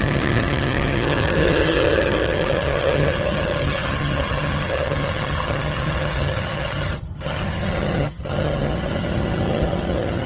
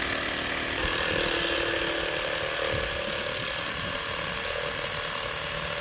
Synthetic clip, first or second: first